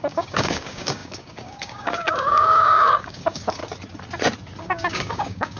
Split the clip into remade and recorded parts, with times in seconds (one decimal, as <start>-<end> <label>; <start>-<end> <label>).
0.0-3.6 remade; 3.6-4.6 recorded; 4.6-5.6 remade

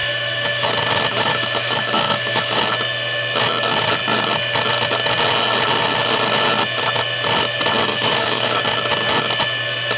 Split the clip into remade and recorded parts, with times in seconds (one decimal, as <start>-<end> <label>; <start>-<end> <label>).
0.0-0.7 remade; 0.7-1.1 recorded; 1.1-2.6 remade; 2.6-7.9 recorded; 7.9-8.6 remade; 8.6-10.0 recorded

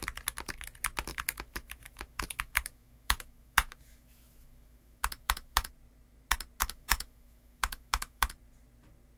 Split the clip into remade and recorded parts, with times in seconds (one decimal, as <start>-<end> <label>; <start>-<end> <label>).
0.0-1.1 recorded; 1.1-5.7 remade; 5.7-6.6 recorded; 6.6-8.3 remade; 8.3-9.2 recorded

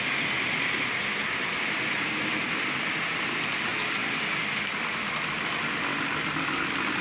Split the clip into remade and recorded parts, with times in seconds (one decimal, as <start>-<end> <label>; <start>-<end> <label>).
0.0-7.0 recorded